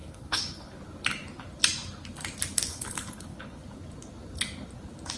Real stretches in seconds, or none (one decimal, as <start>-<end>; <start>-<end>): 0.8-2.7; 3.6-5.2